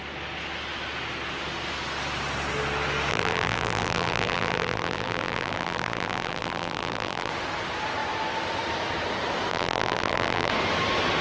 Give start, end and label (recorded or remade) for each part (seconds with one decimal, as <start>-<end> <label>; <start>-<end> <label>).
0.0-3.1 recorded; 3.1-7.3 remade; 7.3-9.5 recorded; 9.5-10.5 remade; 10.5-11.2 recorded